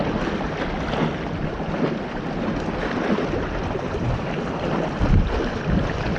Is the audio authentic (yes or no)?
yes